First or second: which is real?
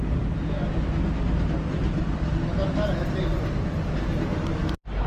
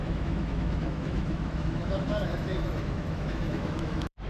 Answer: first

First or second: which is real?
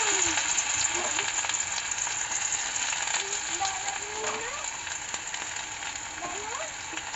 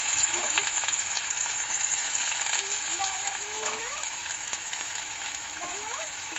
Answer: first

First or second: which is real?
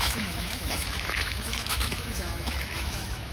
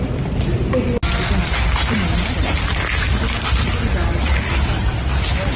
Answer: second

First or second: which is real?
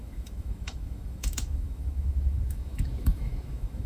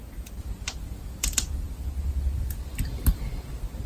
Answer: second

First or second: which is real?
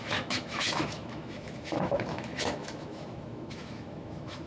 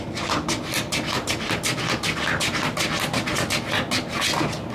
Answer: second